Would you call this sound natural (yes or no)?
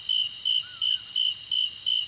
yes